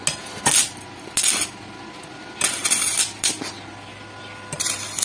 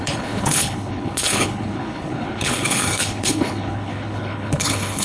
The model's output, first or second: second